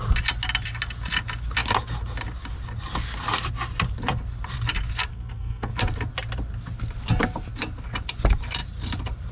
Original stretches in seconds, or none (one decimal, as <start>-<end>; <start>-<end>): 0.0-5.1; 5.7-9.3